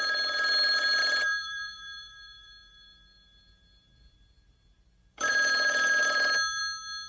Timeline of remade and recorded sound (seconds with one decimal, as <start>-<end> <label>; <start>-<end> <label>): 0.0-1.0 recorded; 1.0-5.3 remade; 5.3-7.1 recorded